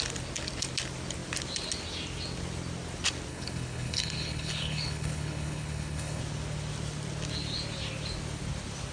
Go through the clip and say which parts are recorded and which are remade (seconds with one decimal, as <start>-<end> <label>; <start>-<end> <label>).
0.0-3.3 recorded; 3.3-6.2 remade; 6.2-8.9 recorded

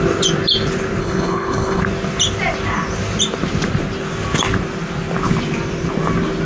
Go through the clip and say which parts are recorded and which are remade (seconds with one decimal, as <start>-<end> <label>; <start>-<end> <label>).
0.0-1.0 recorded; 1.0-1.8 remade; 1.8-6.5 recorded

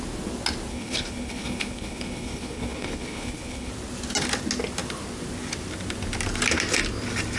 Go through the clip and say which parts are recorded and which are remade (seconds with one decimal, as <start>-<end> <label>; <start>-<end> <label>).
0.0-0.7 recorded; 0.7-3.7 remade; 3.7-7.4 recorded

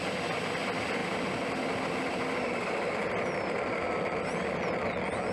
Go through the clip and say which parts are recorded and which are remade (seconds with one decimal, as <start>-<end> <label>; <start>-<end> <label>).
0.0-5.3 recorded